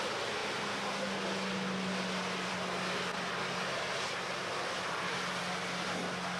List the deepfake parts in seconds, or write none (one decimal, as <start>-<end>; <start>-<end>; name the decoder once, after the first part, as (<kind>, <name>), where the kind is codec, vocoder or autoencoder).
none